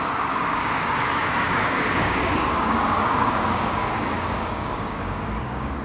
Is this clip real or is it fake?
fake